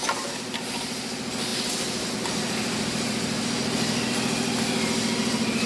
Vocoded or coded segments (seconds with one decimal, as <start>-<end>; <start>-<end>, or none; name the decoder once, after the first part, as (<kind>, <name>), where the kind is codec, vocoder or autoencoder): none